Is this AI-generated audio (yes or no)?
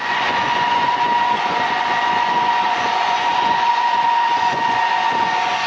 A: yes